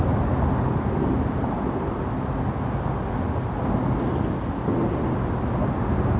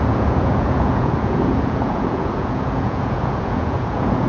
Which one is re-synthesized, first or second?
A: second